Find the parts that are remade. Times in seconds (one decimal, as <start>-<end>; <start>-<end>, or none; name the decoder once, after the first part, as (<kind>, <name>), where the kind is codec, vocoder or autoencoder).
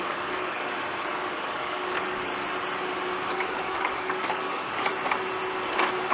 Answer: 0.0-2.3 (codec, DAC); 3.3-4.9